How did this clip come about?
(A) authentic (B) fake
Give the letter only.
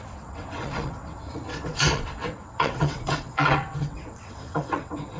B